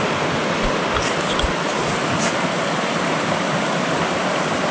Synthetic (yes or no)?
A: no